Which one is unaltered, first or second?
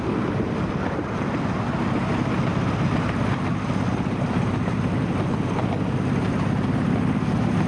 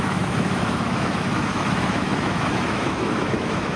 first